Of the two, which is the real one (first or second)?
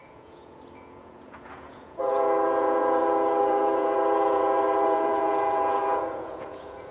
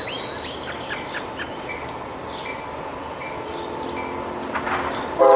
second